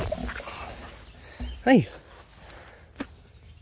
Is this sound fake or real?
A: real